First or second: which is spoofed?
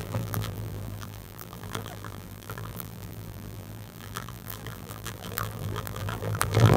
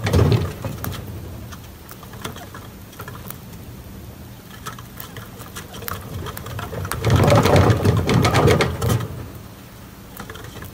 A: first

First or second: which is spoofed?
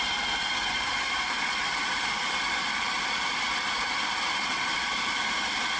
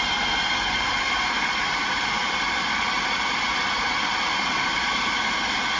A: first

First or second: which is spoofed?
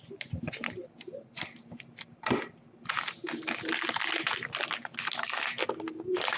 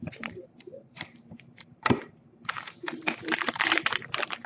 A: second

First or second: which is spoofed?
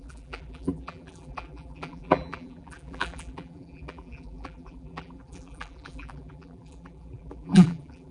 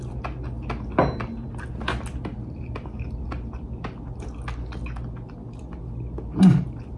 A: first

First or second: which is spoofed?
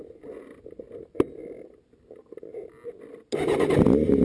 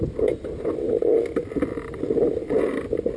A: second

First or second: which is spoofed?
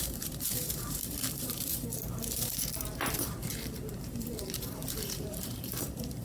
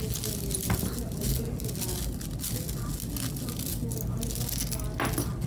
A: first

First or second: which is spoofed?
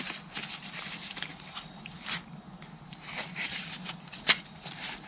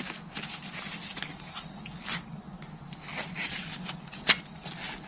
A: first